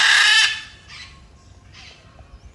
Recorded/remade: recorded